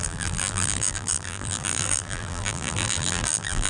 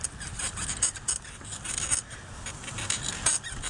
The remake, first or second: first